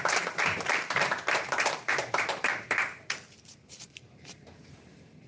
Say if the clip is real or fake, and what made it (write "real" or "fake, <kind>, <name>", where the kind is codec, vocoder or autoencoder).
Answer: fake, vocoder, BigVGAN v2